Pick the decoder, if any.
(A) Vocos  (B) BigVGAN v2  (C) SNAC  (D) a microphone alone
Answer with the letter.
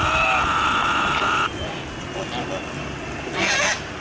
D